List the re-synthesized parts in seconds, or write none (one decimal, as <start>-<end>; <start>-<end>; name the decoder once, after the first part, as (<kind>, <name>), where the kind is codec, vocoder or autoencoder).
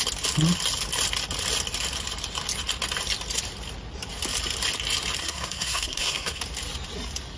5.2-6.4 (codec, SNAC)